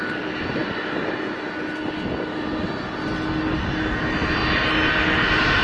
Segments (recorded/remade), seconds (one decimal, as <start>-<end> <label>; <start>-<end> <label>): 0.0-5.6 recorded

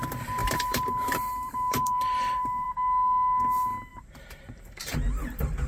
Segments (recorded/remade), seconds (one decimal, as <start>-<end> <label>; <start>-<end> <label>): 0.0-0.4 recorded; 0.4-2.7 remade; 2.7-3.9 recorded; 3.9-5.7 remade

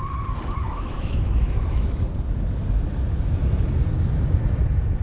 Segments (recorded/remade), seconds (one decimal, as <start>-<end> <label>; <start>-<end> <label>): 0.0-0.6 recorded; 0.6-2.0 remade; 2.0-5.0 recorded

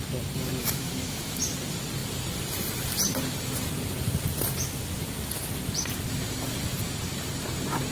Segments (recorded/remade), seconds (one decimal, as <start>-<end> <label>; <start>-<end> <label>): 0.0-0.6 recorded; 0.6-1.4 remade; 1.4-7.9 recorded

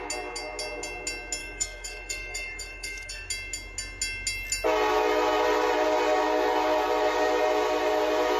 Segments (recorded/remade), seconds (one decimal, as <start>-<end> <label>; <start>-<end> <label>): 0.0-1.4 recorded; 1.4-3.3 remade; 3.3-8.4 recorded